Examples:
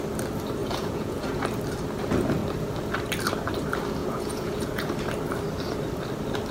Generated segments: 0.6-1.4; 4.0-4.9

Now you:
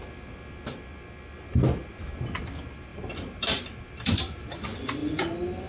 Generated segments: 2.9-4.6

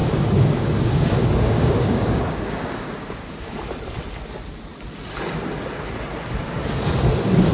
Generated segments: 0.0-3.5

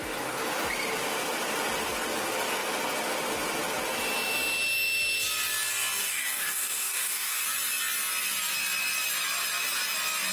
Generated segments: 6.0-7.4

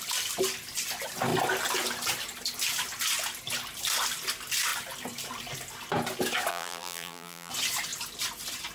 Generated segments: 6.5-7.5

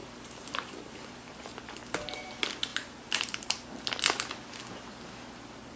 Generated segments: 0.0-1.3; 2.7-3.8

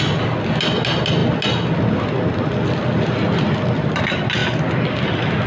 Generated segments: none

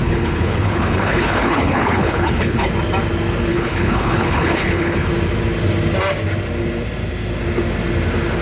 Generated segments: 0.0-2.7; 3.5-5.1